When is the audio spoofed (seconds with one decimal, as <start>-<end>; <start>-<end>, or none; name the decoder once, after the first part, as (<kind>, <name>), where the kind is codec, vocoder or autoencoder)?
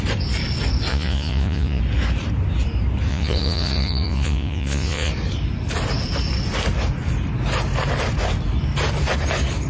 0.9-1.8 (vocoder, Vocos); 3.1-5.1